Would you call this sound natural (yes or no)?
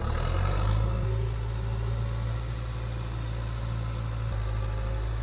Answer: yes